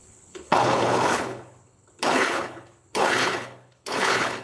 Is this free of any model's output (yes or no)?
no